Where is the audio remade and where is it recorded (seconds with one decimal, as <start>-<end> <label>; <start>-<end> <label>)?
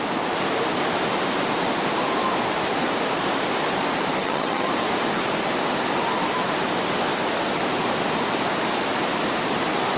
0.0-4.2 recorded; 4.2-4.7 remade; 4.7-10.0 recorded